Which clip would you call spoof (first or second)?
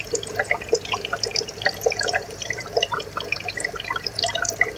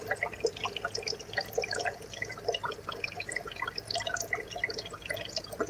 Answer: first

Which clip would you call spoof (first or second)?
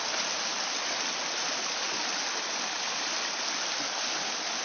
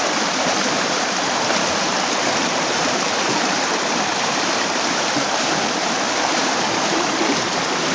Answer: second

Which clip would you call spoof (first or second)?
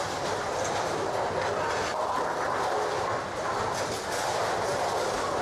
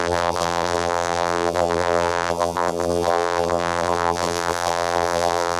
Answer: second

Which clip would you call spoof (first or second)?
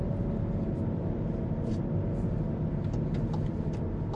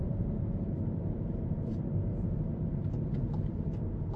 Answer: second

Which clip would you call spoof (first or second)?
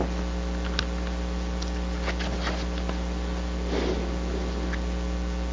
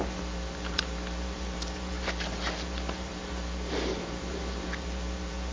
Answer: second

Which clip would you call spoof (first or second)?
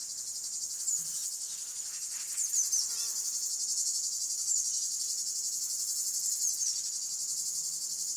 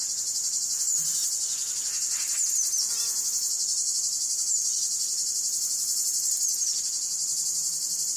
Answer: second